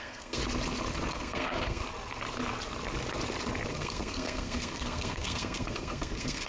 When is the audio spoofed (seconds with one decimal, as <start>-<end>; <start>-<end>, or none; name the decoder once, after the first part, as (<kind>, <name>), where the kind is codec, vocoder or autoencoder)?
0.0-0.4 (codec, SNAC); 1.1-1.8; 3.7-6.5